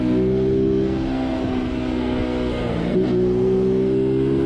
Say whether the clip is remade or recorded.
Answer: remade